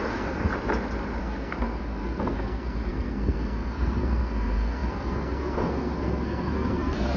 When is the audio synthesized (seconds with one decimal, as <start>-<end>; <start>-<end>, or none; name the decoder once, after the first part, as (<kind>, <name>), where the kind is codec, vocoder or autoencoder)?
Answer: 0.0-0.5 (codec, SNAC); 1.2-7.2